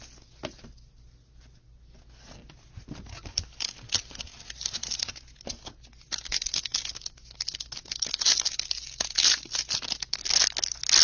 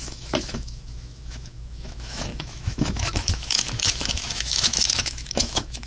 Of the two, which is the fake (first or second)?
second